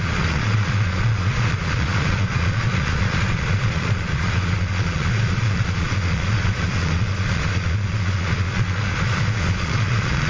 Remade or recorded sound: remade